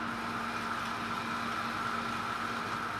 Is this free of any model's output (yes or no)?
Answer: yes